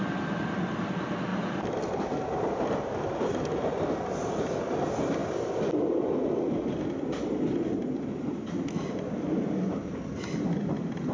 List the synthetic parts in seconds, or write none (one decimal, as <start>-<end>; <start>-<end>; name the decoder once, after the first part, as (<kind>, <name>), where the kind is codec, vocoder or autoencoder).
1.3-3.9 (vocoder, BigVGAN v2)